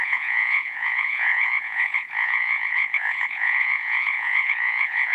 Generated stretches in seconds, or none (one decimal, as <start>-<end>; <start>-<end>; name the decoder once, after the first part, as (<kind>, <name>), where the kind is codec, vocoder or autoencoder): 0.0-5.1 (vocoder, Vocos)